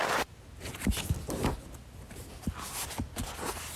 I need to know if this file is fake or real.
real